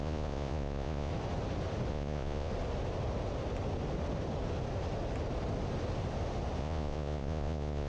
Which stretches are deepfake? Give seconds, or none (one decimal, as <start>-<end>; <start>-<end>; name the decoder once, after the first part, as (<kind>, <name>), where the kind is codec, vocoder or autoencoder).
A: 0.0-1.1 (vocoder, Vocos); 1.9-2.5; 6.6-7.9